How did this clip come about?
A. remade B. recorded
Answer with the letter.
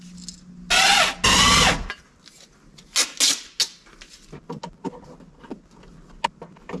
B